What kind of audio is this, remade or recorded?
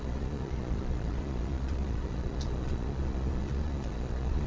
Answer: remade